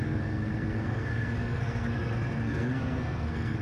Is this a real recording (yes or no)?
no